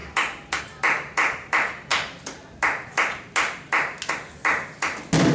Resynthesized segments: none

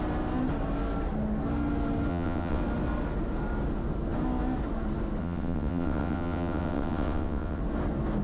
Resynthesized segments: 2.1-2.6 (vocoder, WaveNeXt); 5.2-7.6

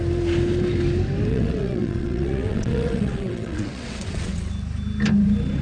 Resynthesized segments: 1.3-4.5 (vocoder, WaveNeXt)

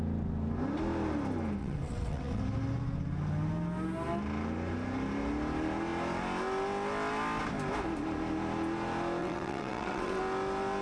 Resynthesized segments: 1.6-2.4 (vocoder, WaveNeXt); 9.2-10.2

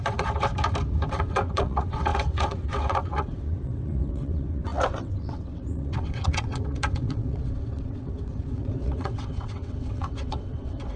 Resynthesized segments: 0.0-0.5 (vocoder, WaveNeXt); 1.1-11.0

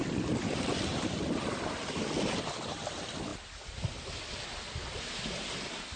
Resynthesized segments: none

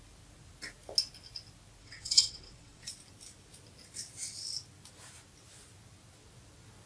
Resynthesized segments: 1.8-2.9 (vocoder, WaveNeXt)

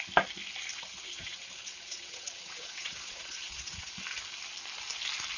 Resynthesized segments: 0.7-3.9 (vocoder, WaveNeXt)